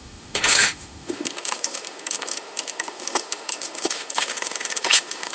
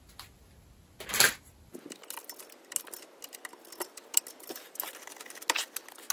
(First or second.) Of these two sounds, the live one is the second